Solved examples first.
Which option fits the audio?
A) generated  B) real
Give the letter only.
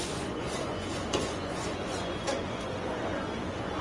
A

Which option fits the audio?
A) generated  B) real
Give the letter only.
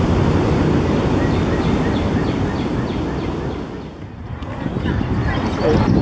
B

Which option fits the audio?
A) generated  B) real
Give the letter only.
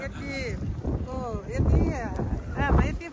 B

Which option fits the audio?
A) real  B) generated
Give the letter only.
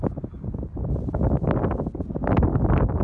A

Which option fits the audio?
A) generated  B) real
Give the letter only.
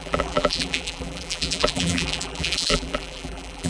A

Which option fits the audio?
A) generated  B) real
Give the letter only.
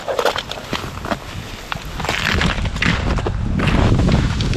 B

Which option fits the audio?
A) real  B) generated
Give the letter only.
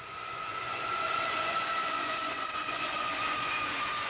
B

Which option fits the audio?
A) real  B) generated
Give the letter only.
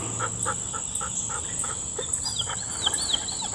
A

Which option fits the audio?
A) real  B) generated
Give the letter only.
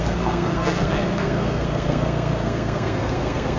B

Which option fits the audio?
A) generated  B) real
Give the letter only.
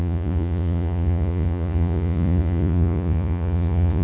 A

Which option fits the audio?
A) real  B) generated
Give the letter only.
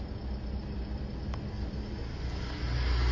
A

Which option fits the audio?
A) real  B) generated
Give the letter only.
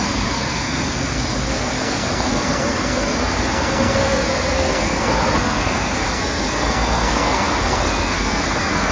B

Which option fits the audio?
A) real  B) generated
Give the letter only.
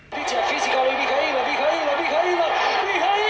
A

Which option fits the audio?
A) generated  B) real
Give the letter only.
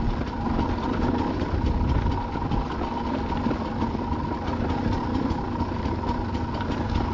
B